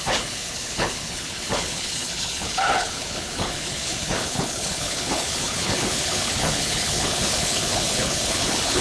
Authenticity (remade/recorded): remade